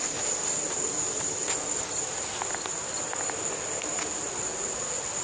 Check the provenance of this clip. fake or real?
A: real